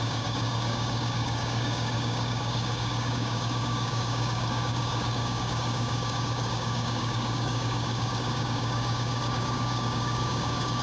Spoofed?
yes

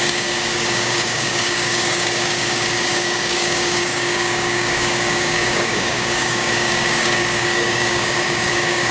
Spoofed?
yes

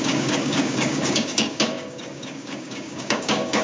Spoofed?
yes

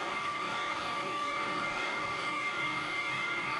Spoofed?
yes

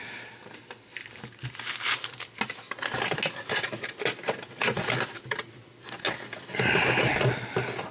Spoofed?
no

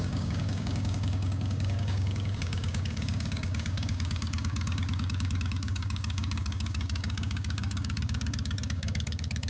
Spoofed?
yes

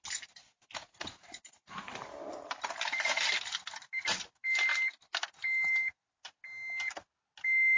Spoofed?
no